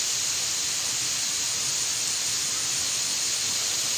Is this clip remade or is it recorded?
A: recorded